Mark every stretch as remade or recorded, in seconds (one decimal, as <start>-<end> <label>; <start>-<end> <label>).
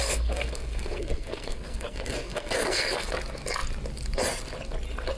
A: 0.0-3.1 remade; 3.1-5.2 recorded